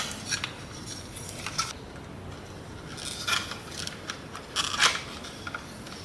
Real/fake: real